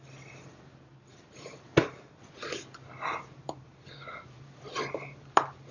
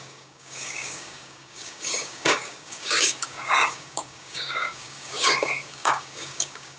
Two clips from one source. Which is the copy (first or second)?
second